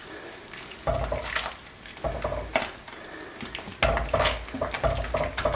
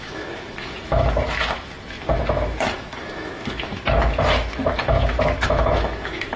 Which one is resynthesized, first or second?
second